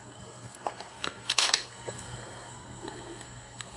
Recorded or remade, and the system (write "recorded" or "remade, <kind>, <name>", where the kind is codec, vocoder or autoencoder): remade, codec, SNAC